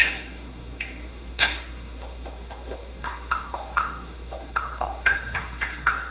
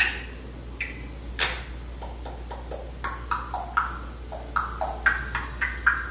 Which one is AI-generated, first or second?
first